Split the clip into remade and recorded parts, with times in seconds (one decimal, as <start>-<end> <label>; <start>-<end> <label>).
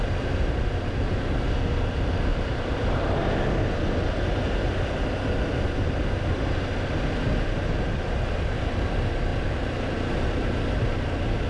0.0-2.3 recorded; 2.3-3.2 remade; 3.2-11.5 recorded